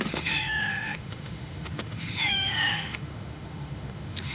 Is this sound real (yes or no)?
no